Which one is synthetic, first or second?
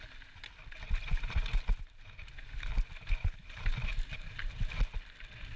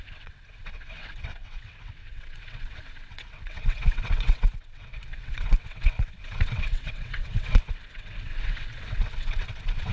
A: second